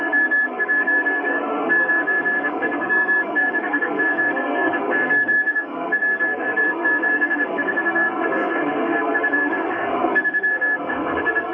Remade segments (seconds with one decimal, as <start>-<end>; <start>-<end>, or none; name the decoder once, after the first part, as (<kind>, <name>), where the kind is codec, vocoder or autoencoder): 0.0-11.5 (codec, SNAC)